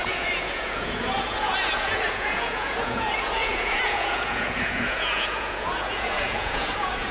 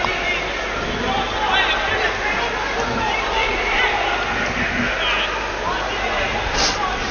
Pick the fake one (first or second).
first